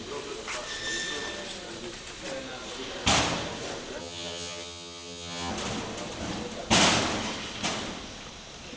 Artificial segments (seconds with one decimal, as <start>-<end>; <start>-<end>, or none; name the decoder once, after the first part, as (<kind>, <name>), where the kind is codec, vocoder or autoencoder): 4.0-5.5 (vocoder, HiFi-GAN)